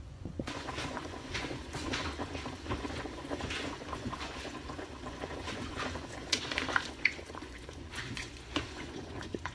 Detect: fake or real fake